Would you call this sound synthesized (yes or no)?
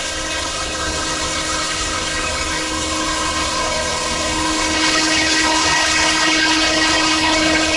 yes